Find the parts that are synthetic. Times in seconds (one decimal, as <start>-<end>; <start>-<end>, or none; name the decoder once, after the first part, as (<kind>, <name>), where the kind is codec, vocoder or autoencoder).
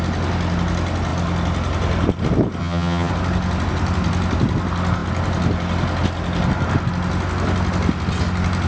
2.6-3.1 (vocoder, HiFi-GAN)